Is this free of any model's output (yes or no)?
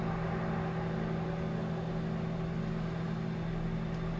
yes